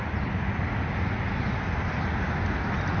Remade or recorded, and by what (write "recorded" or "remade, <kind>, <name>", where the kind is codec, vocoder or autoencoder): recorded